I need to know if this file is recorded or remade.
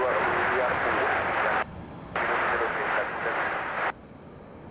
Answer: recorded